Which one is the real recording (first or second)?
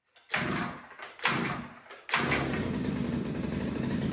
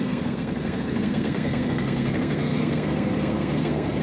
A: first